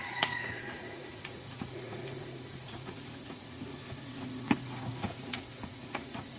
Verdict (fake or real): fake